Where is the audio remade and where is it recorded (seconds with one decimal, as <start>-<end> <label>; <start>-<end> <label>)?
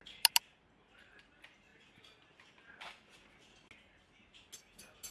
0.0-5.1 recorded